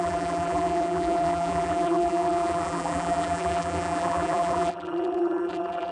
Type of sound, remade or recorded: remade